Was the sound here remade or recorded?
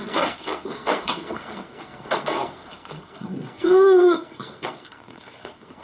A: remade